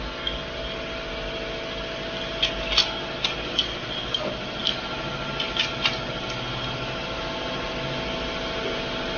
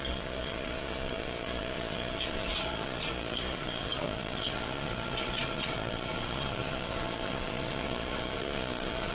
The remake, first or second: second